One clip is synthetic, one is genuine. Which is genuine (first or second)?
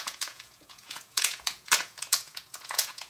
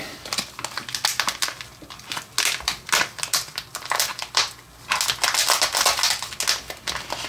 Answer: second